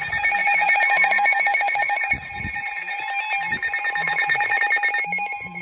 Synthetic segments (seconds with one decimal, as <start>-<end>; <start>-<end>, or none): 0.4-3.0; 4.0-4.6